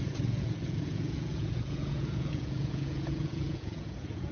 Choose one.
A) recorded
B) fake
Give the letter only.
B